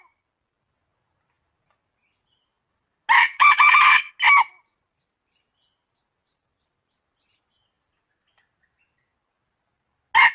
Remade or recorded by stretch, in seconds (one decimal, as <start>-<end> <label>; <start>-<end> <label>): 0.0-3.2 recorded; 3.2-4.1 remade; 4.1-10.3 recorded